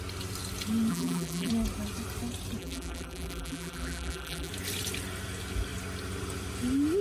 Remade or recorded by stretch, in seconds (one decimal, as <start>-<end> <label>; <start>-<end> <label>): 0.0-0.9 recorded; 0.9-1.5 remade; 1.5-2.6 recorded; 2.6-4.5 remade; 4.5-7.0 recorded